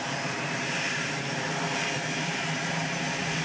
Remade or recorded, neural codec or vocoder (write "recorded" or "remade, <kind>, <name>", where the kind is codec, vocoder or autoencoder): remade, vocoder, BigVGAN v2